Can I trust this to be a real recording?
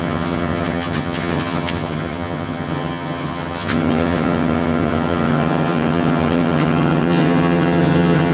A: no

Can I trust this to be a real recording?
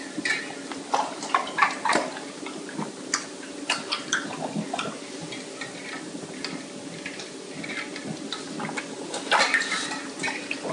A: yes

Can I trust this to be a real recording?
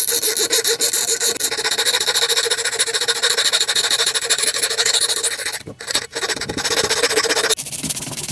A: yes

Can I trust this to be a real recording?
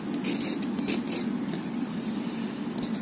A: yes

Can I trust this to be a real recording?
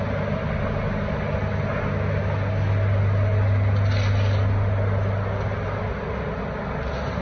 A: yes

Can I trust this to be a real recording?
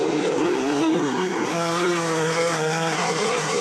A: no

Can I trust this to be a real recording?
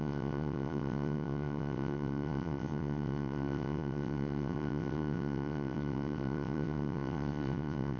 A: no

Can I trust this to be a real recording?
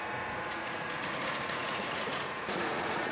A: no